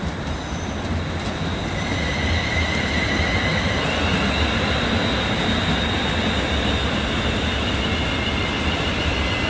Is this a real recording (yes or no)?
yes